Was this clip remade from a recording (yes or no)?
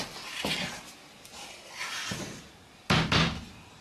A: no